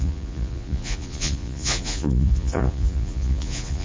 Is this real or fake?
fake